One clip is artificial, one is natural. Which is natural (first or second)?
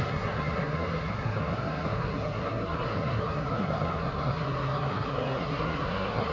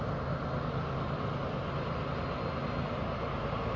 second